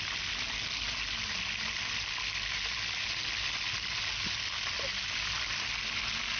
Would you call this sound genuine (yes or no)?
yes